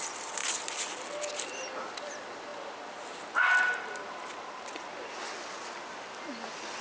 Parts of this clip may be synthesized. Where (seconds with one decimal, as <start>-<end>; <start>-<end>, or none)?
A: none